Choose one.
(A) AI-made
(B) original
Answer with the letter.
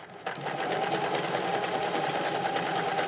B